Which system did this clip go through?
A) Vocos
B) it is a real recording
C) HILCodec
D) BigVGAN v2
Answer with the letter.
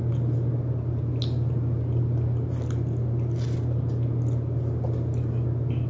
B